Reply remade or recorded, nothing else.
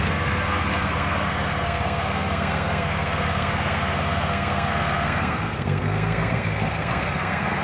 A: remade